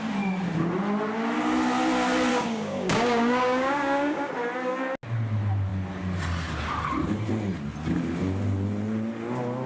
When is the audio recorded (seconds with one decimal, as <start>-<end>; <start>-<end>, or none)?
0.0-2.3; 4.3-9.7